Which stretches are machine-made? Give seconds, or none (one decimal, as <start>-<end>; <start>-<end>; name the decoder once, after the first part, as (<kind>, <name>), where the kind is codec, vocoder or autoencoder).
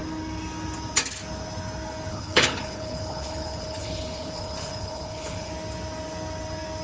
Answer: 2.1-5.5 (codec, HILCodec)